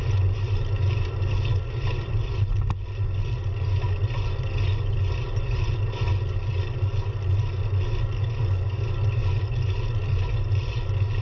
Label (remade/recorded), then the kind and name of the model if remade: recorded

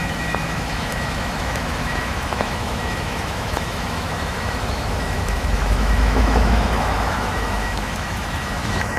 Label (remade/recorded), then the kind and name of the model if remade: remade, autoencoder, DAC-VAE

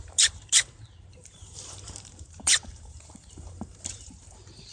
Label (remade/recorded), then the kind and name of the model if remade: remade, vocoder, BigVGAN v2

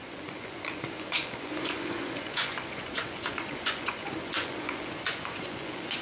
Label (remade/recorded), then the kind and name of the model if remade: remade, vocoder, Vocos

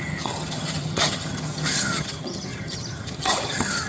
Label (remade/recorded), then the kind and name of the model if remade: remade, vocoder, HiFi-GAN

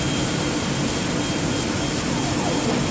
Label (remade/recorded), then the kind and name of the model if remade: remade, vocoder, BigVGAN v2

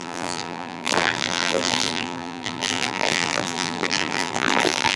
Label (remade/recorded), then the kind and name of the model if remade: remade, vocoder, BigVGAN v2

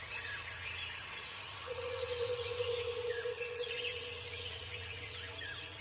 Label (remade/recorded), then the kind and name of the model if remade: remade, vocoder, WaveNeXt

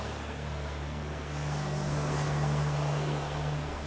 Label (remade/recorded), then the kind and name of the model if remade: remade, codec, SNAC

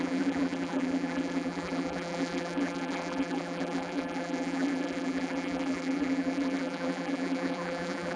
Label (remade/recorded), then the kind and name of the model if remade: remade, vocoder, BigVGAN v2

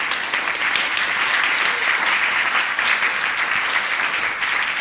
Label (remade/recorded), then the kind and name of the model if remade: recorded